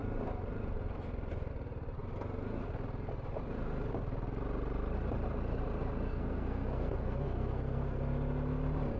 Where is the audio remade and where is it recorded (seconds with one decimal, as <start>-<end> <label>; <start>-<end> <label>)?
0.0-6.1 recorded; 6.1-8.0 remade; 8.0-9.0 recorded